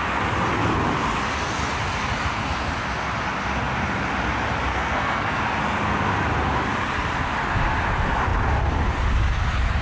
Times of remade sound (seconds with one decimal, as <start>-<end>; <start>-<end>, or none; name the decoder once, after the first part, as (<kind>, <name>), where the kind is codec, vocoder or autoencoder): 4.7-5.4 (codec, SNAC)